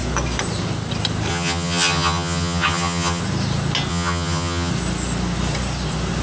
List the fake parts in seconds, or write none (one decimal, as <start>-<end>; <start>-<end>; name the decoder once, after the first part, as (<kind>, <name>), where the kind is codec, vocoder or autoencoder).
1.3-3.2 (vocoder, HiFi-GAN); 3.9-4.7